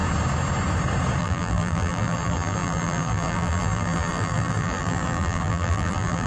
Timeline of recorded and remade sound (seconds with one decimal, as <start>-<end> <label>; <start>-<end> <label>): 0.0-1.2 recorded; 1.2-6.3 remade